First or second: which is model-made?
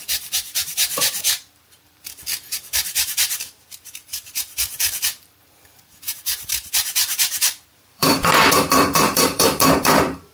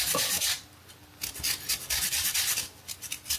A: first